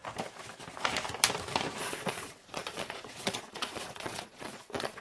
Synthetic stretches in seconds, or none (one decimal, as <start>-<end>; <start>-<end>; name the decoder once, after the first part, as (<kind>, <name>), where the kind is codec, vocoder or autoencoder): 1.8-5.0 (vocoder, Vocos)

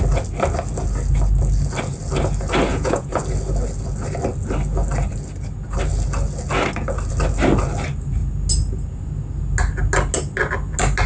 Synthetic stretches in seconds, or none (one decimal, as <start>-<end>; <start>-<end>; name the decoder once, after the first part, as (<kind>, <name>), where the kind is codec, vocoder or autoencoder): 2.7-3.2 (vocoder, Vocos)

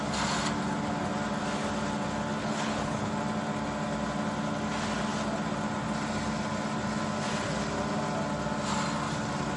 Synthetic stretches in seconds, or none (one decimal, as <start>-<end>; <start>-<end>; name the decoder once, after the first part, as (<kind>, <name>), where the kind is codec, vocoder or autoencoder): 2.4-3.1 (codec, HILCodec)

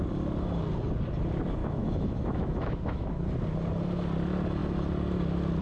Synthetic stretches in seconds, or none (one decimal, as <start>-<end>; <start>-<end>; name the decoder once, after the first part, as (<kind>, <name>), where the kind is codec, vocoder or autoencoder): 1.6-3.2 (autoencoder, DAC-VAE)